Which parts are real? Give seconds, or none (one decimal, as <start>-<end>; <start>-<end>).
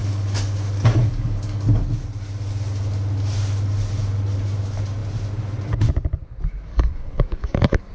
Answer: 1.8-6.7